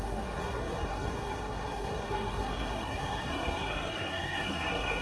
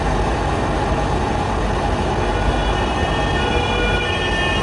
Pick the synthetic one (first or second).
first